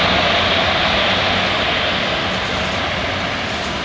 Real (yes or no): yes